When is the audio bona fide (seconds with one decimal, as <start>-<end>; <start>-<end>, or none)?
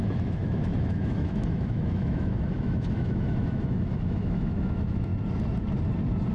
5.1-6.3